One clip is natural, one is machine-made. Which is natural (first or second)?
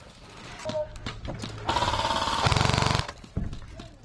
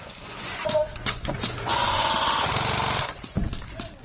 first